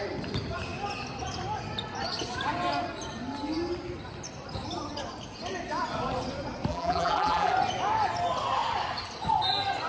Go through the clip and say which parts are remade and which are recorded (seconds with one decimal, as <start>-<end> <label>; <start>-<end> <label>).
0.0-6.7 recorded; 6.7-7.5 remade; 7.5-9.9 recorded